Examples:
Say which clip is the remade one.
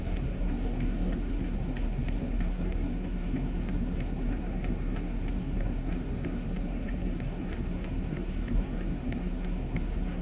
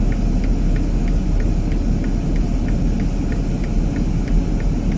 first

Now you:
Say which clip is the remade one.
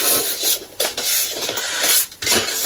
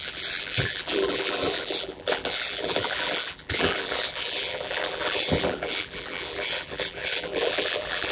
second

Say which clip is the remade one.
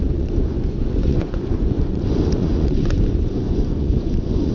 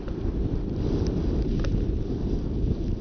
first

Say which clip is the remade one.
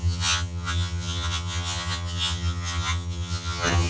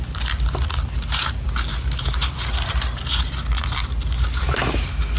first